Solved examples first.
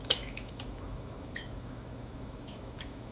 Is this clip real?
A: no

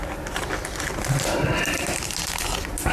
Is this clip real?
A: yes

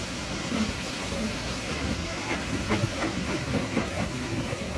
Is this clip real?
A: no